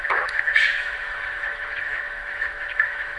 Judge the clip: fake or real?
fake